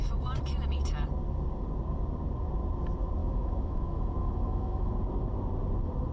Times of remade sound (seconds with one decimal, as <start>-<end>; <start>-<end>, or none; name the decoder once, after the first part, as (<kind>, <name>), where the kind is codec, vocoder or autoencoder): 3.2-4.9 (autoencoder, DAC-VAE)